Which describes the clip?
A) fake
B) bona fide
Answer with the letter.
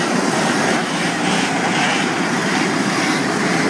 A